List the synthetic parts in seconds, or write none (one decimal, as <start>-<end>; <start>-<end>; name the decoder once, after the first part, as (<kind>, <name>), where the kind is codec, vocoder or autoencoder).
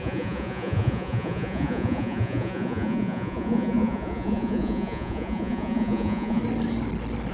0.0-6.4 (vocoder, Vocos)